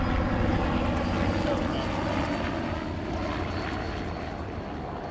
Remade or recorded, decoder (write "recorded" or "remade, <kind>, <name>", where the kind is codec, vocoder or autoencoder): recorded